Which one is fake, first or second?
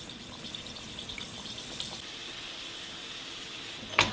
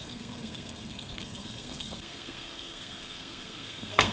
second